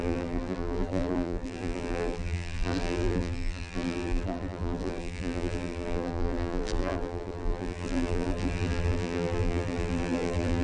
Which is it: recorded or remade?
remade